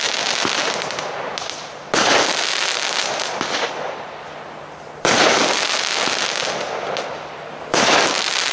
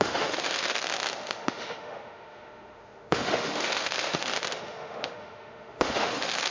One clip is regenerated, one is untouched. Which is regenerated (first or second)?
second